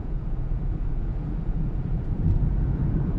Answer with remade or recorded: remade